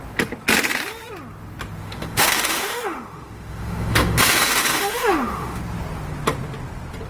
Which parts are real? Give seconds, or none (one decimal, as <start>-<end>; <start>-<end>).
0.0-1.8; 5.6-7.1